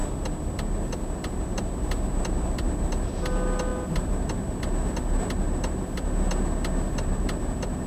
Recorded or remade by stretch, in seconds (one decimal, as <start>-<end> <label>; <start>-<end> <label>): 0.0-7.9 recorded